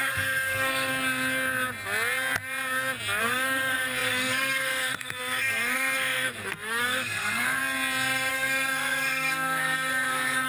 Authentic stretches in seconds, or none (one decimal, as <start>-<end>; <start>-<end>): 0.9-3.2; 7.6-8.3